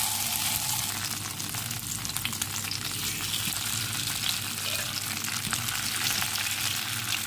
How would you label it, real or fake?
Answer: real